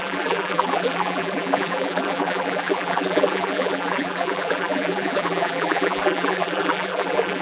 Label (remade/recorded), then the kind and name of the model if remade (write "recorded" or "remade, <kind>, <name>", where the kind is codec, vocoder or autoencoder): remade, vocoder, BigVGAN v2